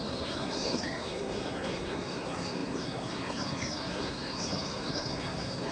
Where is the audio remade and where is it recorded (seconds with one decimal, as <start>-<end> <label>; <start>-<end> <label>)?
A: 0.0-5.7 remade